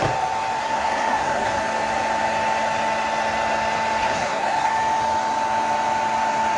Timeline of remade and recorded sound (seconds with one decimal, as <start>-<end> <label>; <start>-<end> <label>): 0.0-0.6 recorded; 0.6-1.6 remade; 1.6-4.0 recorded; 4.0-4.7 remade; 4.7-6.6 recorded